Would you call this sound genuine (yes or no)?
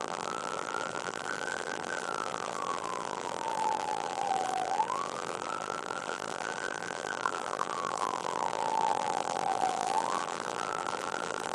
no